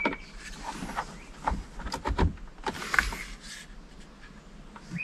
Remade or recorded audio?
recorded